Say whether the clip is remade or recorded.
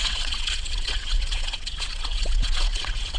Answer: remade